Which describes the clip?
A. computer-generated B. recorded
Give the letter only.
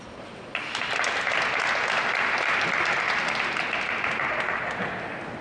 B